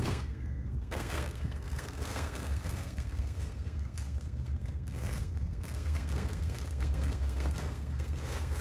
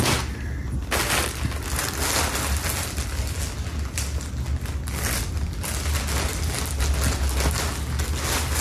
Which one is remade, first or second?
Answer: first